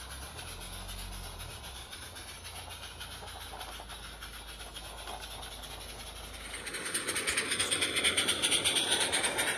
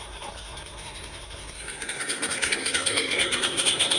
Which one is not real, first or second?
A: second